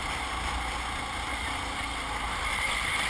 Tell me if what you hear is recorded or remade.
recorded